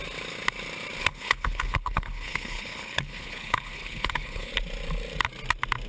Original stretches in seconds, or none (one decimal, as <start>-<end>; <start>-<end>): 0.0-1.0; 4.5-5.9